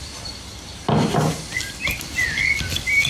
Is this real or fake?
real